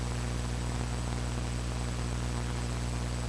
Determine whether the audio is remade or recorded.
recorded